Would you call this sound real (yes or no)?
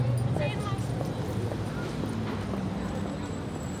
yes